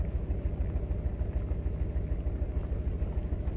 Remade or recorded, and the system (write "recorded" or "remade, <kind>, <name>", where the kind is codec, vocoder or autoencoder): recorded